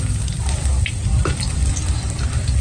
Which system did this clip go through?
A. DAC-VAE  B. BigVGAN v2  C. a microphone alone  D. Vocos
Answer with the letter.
C